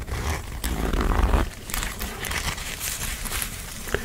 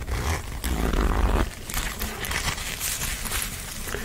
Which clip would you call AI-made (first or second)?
first